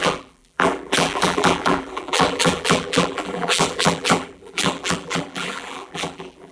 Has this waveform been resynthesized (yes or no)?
yes